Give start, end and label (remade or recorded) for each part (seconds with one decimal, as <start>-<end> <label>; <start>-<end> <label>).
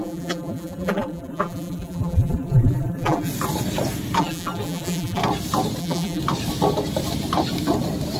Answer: 0.0-3.3 remade; 3.3-4.2 recorded; 4.2-5.2 remade; 5.2-5.8 recorded; 5.8-6.2 remade; 6.2-8.2 recorded